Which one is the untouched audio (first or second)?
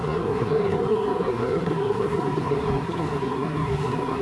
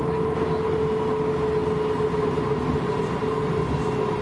second